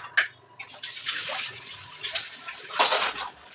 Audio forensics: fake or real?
real